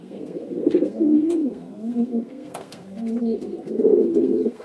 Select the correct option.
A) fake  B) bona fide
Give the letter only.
A